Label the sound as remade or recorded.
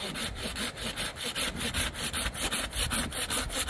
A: recorded